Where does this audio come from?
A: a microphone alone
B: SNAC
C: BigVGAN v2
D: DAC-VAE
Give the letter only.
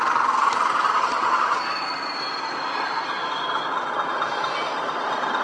A